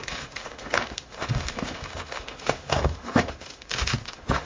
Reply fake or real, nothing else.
fake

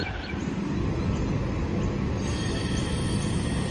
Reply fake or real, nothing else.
real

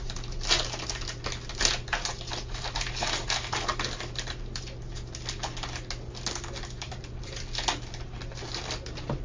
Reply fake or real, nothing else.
real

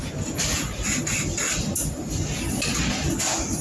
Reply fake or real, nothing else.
real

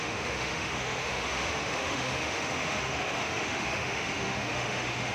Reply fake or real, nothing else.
fake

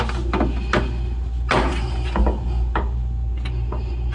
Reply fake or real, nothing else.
real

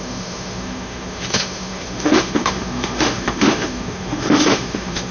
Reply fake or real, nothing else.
fake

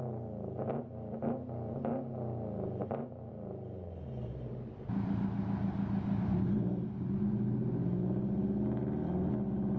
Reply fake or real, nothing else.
real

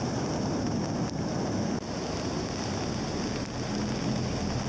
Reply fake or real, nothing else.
real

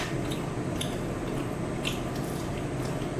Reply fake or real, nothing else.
real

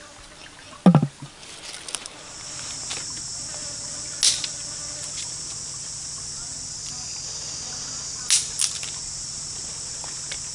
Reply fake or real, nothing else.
real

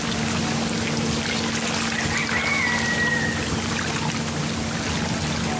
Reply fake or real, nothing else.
real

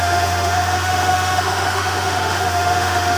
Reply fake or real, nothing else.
fake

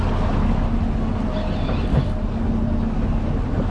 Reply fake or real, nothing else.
real